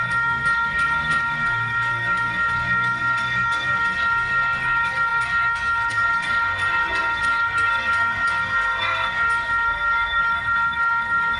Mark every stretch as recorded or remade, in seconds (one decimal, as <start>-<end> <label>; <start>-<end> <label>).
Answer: 0.0-11.4 remade